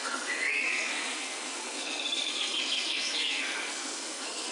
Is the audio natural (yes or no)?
no